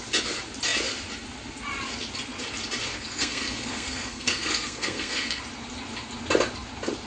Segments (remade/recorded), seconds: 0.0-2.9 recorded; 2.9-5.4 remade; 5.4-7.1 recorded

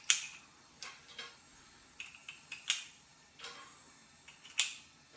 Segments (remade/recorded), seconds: 0.0-0.5 recorded; 0.5-1.1 remade; 1.1-5.2 recorded

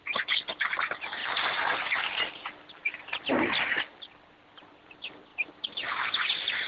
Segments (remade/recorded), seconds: 0.0-6.7 recorded

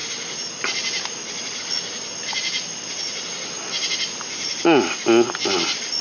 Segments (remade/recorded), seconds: 0.0-6.0 recorded